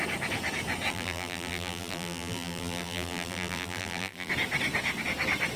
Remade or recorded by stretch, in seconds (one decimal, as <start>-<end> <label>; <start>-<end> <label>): 0.0-0.9 recorded; 0.9-4.3 remade; 4.3-5.6 recorded